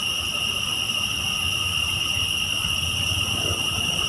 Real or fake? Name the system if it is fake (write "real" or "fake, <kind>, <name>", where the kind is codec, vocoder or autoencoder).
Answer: real